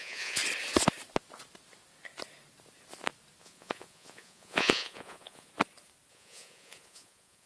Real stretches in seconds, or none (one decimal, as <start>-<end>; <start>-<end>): 0.4-3.4; 5.5-6.1